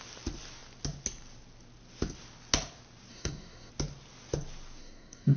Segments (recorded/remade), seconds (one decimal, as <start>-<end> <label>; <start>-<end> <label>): 0.0-3.1 recorded; 3.1-3.7 remade; 3.7-4.8 recorded; 4.8-5.4 remade